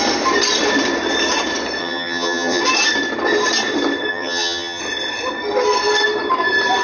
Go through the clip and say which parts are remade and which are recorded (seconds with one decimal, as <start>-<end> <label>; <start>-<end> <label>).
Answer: 0.0-1.8 recorded; 1.8-2.6 remade; 2.6-4.1 recorded; 4.1-4.8 remade; 4.8-6.8 recorded